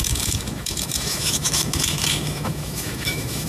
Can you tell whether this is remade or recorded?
remade